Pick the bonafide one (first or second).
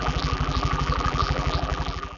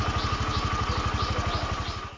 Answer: second